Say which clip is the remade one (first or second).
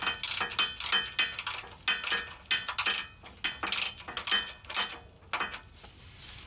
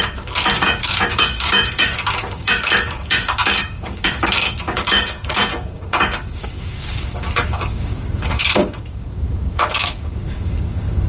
second